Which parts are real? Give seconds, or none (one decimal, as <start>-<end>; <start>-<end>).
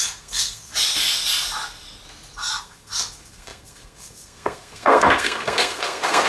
0.7-2.6